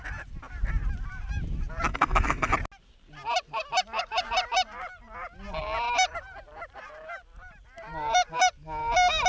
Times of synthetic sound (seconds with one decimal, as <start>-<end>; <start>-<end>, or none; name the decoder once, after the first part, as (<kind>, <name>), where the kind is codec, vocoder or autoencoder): 1.9-2.5 (codec, SNAC)